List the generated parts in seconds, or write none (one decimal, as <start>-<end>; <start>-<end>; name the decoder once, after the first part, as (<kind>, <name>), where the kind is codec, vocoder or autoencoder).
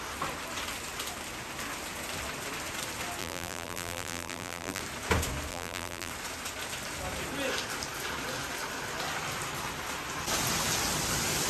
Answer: 3.2-4.8 (vocoder, BigVGAN v2); 5.5-6.1